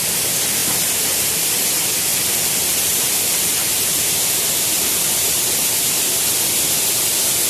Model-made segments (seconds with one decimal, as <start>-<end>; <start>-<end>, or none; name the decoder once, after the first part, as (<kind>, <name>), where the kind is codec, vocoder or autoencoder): 0.6-3.5 (vocoder, BigVGAN v2)